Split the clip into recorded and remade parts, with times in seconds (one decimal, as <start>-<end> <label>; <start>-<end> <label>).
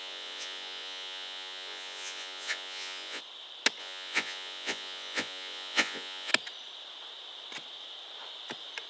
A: 0.0-3.2 remade; 3.2-3.8 recorded; 3.8-6.3 remade; 6.3-8.9 recorded